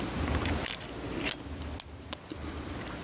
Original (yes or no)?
yes